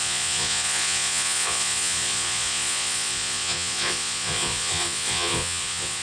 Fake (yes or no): yes